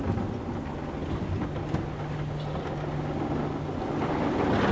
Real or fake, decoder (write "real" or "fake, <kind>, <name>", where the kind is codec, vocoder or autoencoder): real